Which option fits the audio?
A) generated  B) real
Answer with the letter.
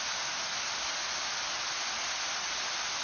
B